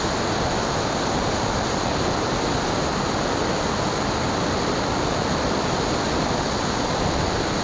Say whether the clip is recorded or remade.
recorded